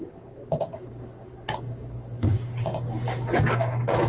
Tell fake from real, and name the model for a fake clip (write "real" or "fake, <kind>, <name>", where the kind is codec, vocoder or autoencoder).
fake, codec, DAC